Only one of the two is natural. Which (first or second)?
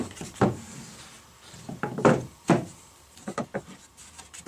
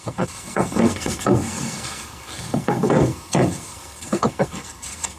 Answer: first